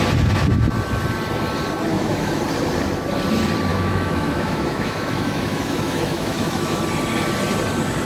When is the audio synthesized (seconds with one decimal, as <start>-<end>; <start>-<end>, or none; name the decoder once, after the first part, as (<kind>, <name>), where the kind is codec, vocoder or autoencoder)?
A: 1.9-2.4 (autoencoder, DAC-VAE); 3.7-6.8